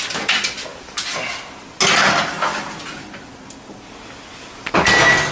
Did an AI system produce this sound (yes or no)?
no